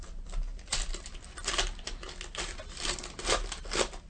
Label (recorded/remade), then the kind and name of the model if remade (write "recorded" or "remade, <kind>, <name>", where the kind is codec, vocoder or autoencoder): recorded